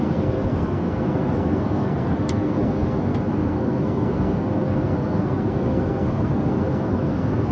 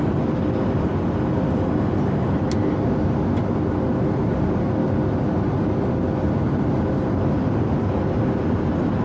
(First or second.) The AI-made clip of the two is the first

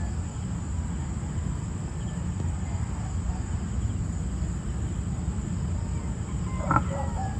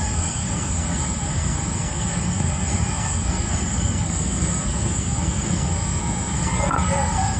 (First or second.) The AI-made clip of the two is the second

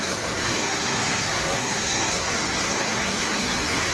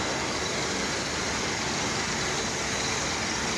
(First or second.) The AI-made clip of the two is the first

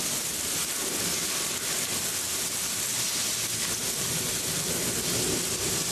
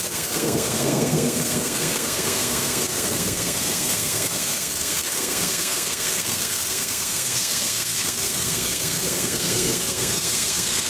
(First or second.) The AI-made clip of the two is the second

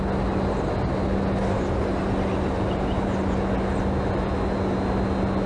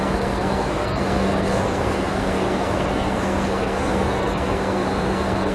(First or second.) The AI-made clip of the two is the second